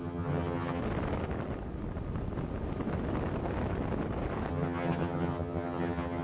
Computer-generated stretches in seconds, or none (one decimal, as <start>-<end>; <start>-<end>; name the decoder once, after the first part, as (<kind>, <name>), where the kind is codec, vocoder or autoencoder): 0.0-0.8 (vocoder, HiFi-GAN); 4.5-6.2